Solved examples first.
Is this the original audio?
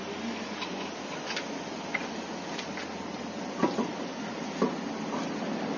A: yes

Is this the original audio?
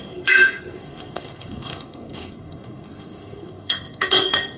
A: no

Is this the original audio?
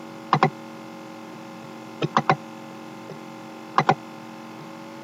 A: yes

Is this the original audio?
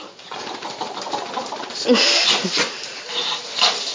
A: yes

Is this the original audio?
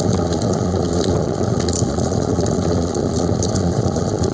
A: no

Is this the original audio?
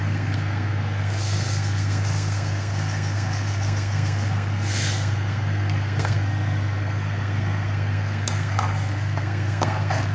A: no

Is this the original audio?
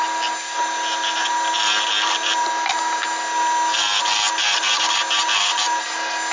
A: yes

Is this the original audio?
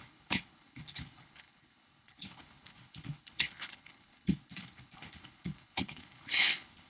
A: no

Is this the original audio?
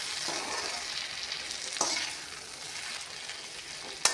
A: yes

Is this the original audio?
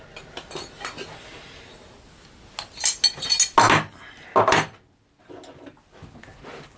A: yes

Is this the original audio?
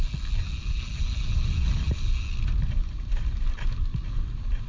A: yes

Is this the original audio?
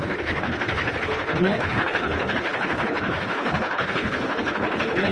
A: no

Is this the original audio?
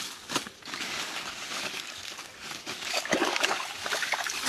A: no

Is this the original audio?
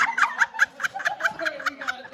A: no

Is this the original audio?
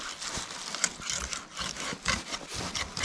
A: yes